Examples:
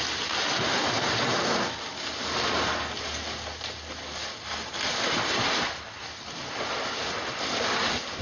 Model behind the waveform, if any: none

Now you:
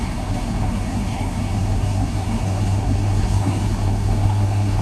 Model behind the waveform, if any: codec, SNAC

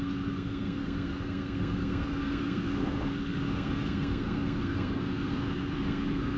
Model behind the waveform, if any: codec, SNAC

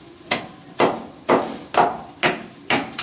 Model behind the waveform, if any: none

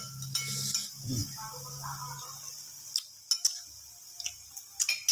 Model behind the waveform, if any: none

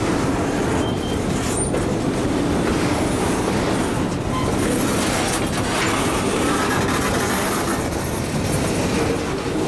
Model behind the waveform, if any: none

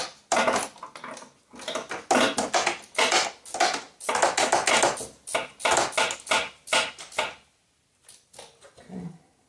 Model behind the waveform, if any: none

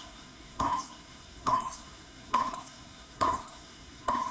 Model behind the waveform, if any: codec, SNAC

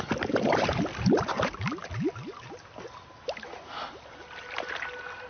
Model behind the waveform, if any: none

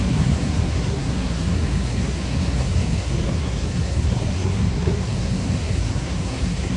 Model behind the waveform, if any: codec, SNAC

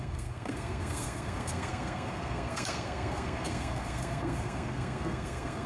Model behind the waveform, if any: codec, SNAC